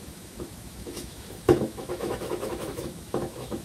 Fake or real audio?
fake